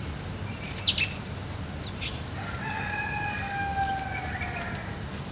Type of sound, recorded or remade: recorded